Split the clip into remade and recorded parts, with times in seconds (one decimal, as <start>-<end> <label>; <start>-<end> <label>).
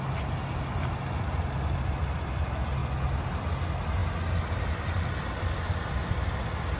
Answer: 0.0-6.8 recorded